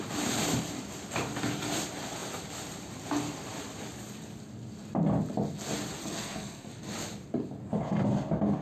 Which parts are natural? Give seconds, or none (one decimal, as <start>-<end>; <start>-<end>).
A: 0.0-6.0; 6.7-8.6